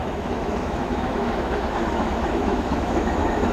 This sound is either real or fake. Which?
fake